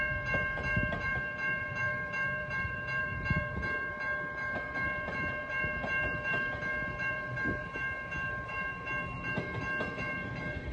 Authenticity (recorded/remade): remade